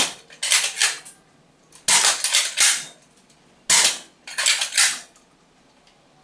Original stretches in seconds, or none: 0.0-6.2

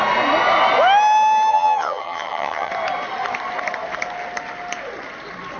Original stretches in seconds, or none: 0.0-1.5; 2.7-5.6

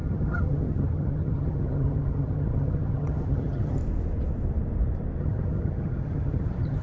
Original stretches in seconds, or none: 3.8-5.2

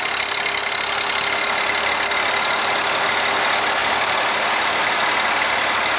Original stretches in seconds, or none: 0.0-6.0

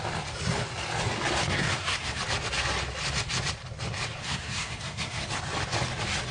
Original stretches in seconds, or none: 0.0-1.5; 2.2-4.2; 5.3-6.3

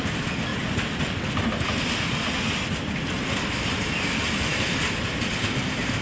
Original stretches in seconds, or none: 0.0-6.0

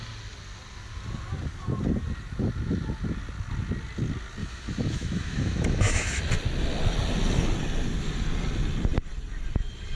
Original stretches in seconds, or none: 0.0-4.4; 6.2-9.9

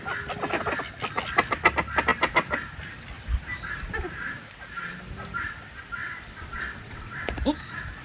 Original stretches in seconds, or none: 0.0-6.0; 7.3-8.0